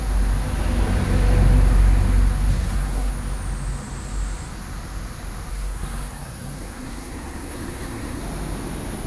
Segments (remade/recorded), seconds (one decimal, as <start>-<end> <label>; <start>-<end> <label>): 0.0-2.5 recorded; 2.5-3.1 remade; 3.1-5.5 recorded; 5.5-8.2 remade; 8.2-9.1 recorded